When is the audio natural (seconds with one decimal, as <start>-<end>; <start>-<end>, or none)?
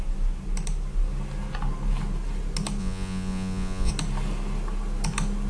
0.0-2.8; 3.9-5.5